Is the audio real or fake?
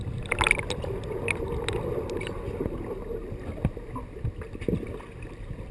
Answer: real